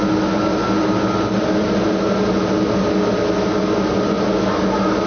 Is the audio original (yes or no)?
yes